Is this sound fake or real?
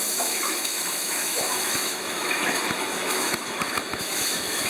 fake